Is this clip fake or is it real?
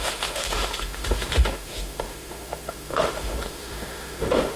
fake